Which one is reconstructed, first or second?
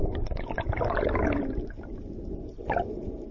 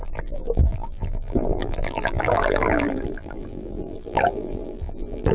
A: second